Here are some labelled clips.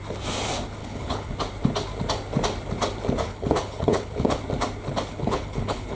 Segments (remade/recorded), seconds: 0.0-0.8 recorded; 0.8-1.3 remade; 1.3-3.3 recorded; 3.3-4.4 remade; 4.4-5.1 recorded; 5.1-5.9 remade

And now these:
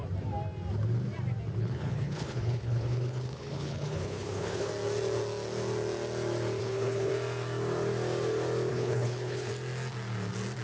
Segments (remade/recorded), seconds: 0.0-1.6 recorded; 1.6-4.7 remade; 4.7-6.6 recorded; 6.6-7.1 remade; 7.1-8.7 recorded; 8.7-9.5 remade; 9.5-10.6 recorded

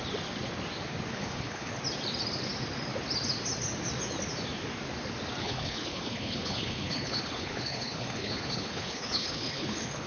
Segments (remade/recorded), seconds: 0.0-1.1 recorded; 1.1-1.7 remade; 1.7-5.4 recorded; 5.4-10.1 remade